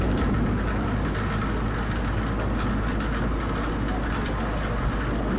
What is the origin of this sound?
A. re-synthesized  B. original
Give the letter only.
B